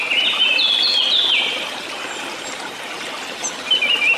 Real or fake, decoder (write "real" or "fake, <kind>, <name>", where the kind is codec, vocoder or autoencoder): real